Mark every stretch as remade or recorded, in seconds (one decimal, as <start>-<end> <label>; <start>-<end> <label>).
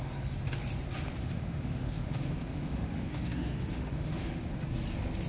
0.0-1.2 recorded; 1.2-4.4 remade; 4.4-5.3 recorded